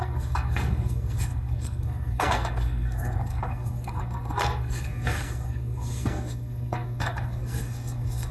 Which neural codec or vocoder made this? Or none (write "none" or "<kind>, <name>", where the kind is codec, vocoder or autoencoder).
codec, SNAC